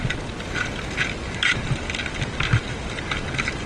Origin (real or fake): real